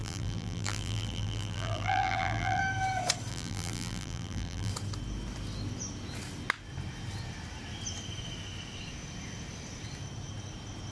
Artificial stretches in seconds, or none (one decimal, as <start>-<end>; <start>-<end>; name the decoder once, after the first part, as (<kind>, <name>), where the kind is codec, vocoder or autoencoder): 0.0-2.6 (vocoder, BigVGAN v2); 3.3-4.7